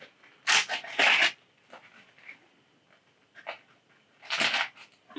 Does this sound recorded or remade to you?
recorded